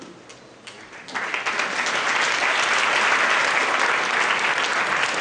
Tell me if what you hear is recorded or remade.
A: recorded